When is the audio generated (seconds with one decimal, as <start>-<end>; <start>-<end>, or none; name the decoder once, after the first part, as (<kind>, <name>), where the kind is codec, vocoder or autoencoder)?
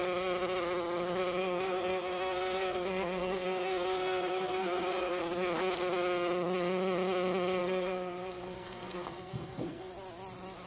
1.4-5.2 (codec, SNAC); 7.6-9.9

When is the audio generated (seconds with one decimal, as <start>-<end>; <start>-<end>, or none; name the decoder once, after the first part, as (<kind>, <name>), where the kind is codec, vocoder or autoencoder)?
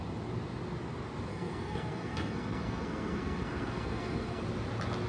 1.3-4.4 (codec, SNAC)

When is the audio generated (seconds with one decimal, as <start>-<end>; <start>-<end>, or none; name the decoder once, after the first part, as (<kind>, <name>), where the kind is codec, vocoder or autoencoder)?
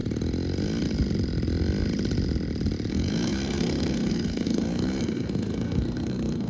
2.9-6.5 (codec, SNAC)